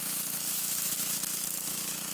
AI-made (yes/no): yes